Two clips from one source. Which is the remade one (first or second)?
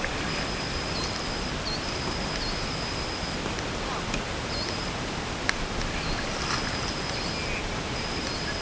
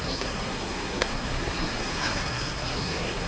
second